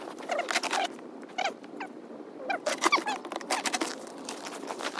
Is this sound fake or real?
real